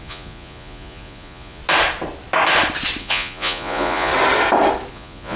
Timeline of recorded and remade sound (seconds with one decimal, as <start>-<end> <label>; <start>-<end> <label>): 0.0-1.6 remade; 1.6-3.0 recorded; 3.0-4.1 remade; 4.1-4.9 recorded; 4.9-5.4 remade